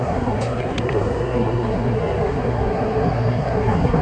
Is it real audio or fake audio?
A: fake